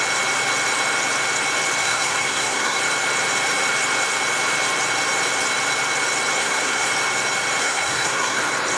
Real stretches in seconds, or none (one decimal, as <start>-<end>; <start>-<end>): 0.0-1.8; 2.8-6.4; 6.9-7.6; 8.4-8.8